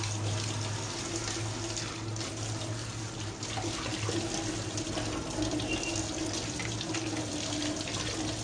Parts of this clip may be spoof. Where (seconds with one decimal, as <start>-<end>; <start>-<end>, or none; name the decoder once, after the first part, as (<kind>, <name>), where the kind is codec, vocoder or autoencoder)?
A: none